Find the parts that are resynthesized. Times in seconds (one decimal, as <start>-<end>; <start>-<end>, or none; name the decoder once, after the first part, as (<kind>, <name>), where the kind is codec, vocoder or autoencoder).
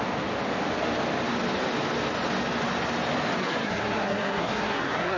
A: 3.4-5.2 (codec, SNAC)